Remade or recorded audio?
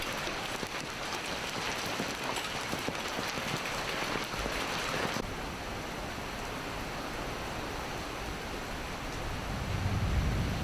recorded